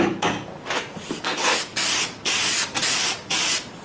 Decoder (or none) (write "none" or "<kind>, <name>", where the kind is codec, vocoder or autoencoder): none